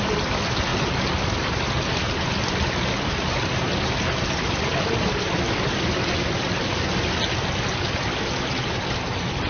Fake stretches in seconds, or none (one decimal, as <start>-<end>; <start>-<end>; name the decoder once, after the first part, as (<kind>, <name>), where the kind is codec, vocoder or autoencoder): none